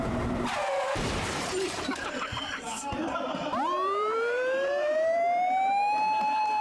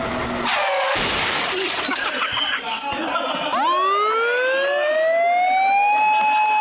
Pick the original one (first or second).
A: second